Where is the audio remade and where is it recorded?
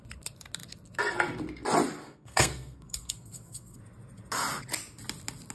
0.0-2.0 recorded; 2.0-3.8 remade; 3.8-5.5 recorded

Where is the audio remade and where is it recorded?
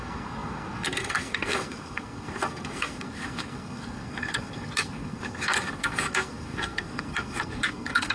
0.0-8.1 remade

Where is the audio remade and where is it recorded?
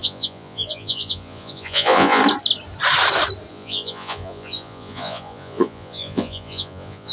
0.0-2.2 remade; 2.2-3.5 recorded; 3.5-7.1 remade